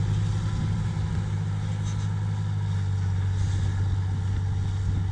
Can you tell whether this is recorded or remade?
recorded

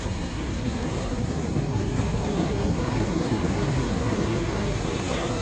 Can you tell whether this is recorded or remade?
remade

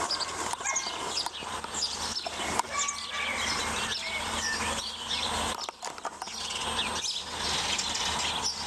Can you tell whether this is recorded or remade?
recorded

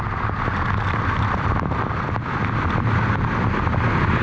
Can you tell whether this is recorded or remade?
recorded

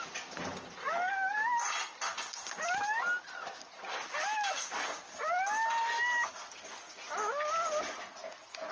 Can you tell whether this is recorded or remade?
recorded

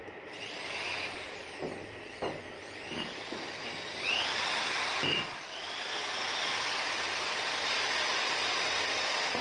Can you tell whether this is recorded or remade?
recorded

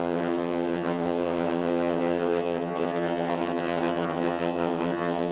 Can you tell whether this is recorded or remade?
remade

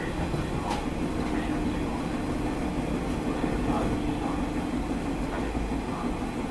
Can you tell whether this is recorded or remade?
recorded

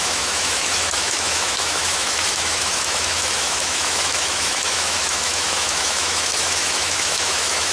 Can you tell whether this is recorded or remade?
remade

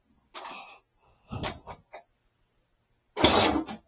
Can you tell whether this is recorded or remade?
recorded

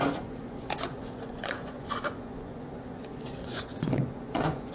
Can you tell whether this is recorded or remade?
remade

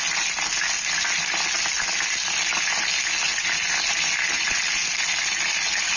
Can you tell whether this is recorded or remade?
recorded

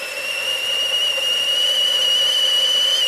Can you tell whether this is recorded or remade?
remade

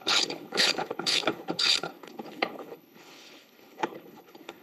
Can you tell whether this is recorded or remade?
remade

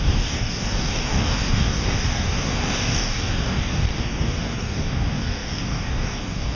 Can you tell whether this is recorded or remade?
remade